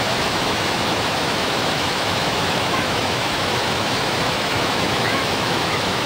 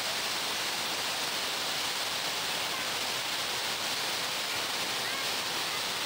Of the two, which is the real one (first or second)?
second